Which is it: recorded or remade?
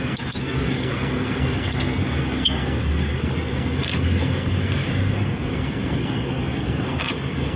remade